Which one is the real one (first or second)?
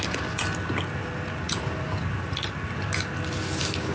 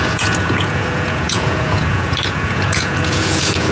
first